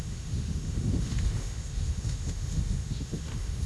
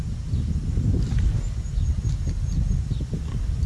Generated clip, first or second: first